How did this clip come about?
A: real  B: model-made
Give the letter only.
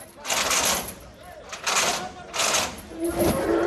A